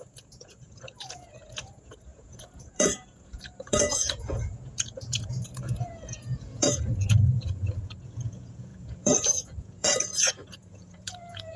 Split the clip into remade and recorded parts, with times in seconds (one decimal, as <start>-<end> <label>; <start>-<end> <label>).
0.0-11.6 remade